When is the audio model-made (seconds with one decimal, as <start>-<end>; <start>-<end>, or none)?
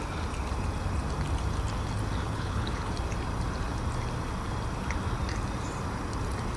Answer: 2.2-2.9